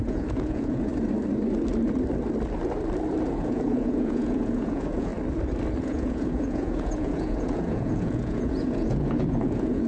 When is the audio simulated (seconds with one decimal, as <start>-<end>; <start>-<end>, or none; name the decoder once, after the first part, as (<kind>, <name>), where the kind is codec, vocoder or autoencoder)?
0.0-0.9 (vocoder, Vocos); 3.4-5.1; 5.8-9.9